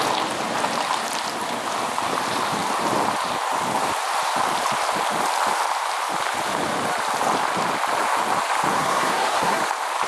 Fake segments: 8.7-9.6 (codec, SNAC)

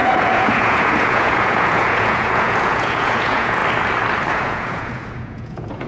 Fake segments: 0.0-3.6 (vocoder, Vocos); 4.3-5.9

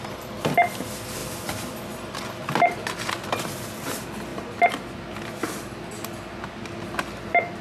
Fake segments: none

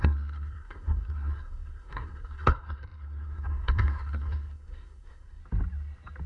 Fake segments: 0.0-5.4 (codec, SNAC)

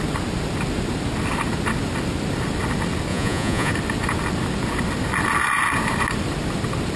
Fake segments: 3.1-3.7 (vocoder, Vocos)

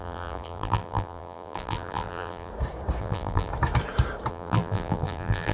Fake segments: 0.0-2.5 (vocoder, BigVGAN v2); 3.0-3.5; 4.3-5.5